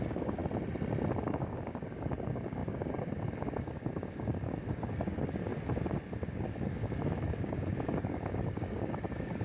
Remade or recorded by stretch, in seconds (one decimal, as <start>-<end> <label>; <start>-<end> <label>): 0.0-0.4 remade; 0.4-1.2 recorded; 1.2-5.5 remade; 5.5-6.3 recorded; 6.3-9.4 remade